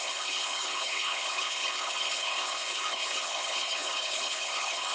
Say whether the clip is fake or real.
fake